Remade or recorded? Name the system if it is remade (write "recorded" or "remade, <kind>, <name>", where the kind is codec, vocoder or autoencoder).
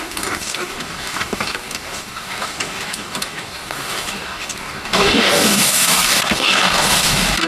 remade, codec, DAC